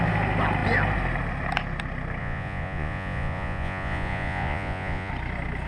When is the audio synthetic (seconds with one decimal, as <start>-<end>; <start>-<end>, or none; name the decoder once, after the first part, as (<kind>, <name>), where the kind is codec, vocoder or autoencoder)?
2.2-5.1 (vocoder, Vocos)